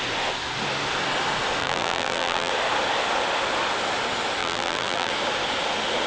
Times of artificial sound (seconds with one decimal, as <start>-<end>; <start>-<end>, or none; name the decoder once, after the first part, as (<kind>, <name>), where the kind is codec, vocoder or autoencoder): 1.6-2.5 (vocoder, BigVGAN v2); 4.4-5.1